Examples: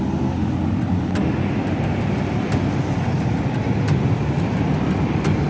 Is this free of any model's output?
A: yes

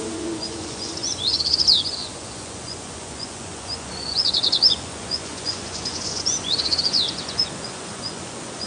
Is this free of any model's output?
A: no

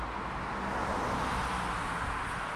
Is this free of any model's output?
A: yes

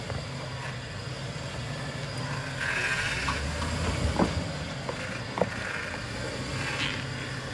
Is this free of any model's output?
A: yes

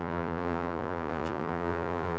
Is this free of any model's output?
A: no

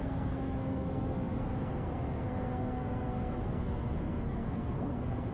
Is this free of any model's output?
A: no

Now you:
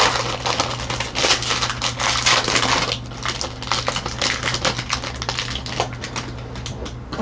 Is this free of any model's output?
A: yes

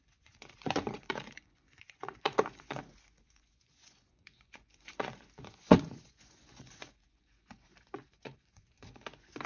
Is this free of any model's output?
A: no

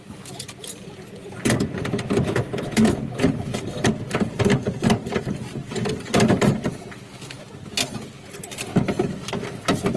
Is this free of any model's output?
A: yes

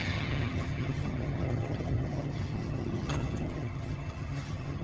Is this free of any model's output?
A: no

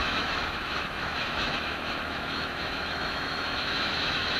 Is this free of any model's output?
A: no